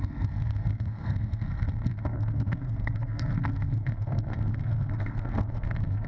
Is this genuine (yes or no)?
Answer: no